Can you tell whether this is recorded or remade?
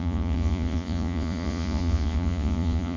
remade